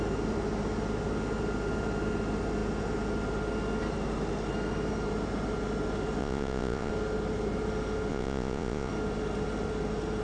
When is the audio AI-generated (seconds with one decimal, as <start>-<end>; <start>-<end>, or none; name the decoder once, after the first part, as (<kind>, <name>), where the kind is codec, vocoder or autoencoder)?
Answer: 6.2-6.9 (vocoder, Vocos); 8.1-8.9

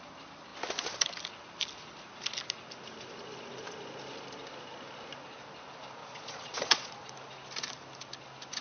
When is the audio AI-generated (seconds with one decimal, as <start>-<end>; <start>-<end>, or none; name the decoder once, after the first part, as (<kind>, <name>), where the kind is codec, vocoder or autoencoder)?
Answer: 6.0-7.1 (vocoder, Vocos)

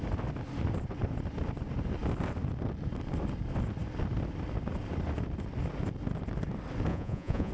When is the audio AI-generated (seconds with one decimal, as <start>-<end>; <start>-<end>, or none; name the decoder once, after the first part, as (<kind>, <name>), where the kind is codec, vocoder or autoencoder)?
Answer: 6.9-7.5 (vocoder, Vocos)

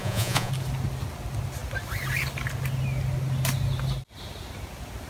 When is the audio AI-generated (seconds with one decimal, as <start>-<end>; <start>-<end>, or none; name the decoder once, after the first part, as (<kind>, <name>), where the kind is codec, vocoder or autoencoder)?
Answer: 0.0-0.5 (vocoder, Vocos)